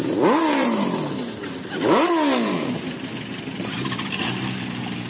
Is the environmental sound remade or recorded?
recorded